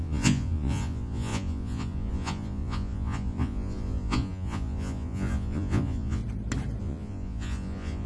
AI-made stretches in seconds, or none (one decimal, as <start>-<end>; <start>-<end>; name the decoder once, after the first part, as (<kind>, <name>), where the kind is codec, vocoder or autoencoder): 0.0-6.2 (vocoder, Vocos); 6.8-8.1